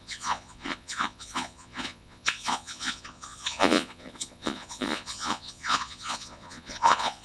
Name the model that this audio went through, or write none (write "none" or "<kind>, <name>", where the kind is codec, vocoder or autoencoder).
vocoder, Vocos